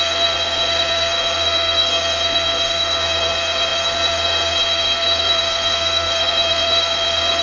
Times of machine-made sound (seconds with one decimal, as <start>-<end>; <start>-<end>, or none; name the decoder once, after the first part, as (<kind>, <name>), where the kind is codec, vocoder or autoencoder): 0.0-7.4 (codec, SNAC)

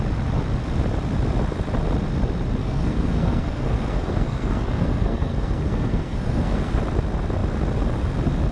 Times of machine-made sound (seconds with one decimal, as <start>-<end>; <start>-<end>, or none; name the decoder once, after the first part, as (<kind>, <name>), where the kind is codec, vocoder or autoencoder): 2.6-6.8 (codec, SNAC)

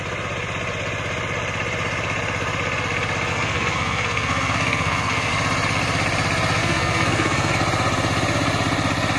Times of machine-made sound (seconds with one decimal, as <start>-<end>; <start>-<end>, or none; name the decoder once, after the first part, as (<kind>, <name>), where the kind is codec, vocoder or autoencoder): 3.3-5.3 (codec, SNAC); 6.6-7.5

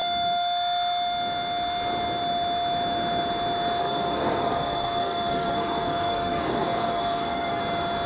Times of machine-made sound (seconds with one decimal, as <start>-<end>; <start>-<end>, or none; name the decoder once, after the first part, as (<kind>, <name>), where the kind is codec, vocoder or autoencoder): 3.8-7.6 (codec, SNAC)